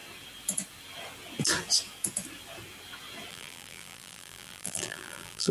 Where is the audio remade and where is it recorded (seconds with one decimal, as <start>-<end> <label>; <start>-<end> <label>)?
0.0-3.3 recorded; 3.3-5.5 remade